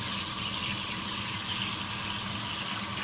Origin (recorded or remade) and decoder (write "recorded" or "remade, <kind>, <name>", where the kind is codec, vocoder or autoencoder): recorded